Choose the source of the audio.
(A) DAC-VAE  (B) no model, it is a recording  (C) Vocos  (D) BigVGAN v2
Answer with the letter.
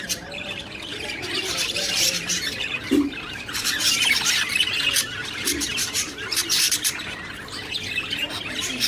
D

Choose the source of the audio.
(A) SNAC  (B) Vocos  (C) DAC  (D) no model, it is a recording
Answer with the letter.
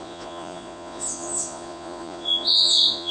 B